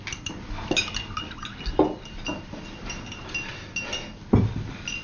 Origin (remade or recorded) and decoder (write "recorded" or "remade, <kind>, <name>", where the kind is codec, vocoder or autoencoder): recorded